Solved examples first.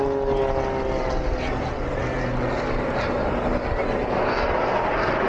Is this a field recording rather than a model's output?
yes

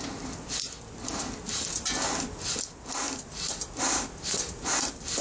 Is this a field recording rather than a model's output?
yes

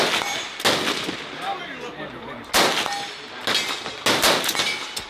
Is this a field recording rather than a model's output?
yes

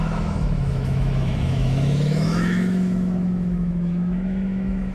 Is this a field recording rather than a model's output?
no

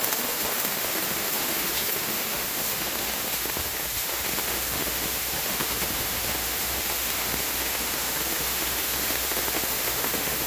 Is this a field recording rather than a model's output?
no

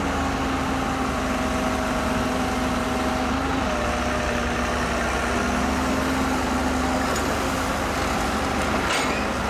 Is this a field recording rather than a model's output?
yes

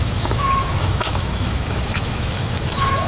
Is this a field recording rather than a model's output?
no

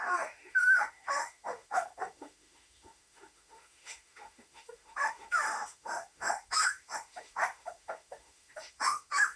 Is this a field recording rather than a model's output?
no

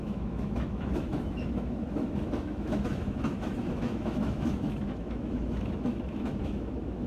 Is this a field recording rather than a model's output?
no